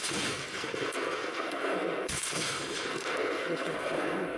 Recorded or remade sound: remade